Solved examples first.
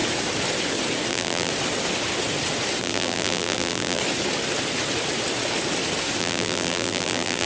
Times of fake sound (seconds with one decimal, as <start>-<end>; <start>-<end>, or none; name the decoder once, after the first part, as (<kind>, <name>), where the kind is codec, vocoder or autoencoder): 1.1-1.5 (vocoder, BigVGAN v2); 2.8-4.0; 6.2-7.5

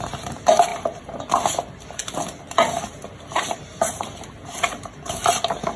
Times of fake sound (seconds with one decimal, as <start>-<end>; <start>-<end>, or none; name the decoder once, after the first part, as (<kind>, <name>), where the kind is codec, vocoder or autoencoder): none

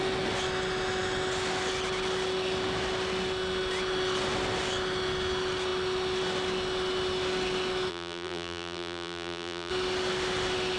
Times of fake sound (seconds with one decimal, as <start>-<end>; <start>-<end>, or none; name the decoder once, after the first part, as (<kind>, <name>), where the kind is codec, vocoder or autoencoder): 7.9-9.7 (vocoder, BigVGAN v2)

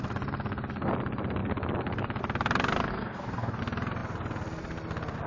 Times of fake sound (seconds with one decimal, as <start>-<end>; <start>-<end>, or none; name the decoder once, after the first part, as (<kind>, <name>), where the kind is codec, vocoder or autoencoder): 2.9-3.6 (codec, DAC)